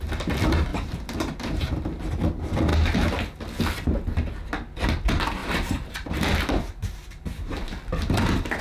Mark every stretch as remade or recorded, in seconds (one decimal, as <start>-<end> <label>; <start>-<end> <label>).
0.0-0.7 recorded; 0.7-1.7 remade; 1.7-5.4 recorded; 5.4-6.1 remade; 6.1-6.8 recorded; 6.8-7.6 remade; 7.6-8.6 recorded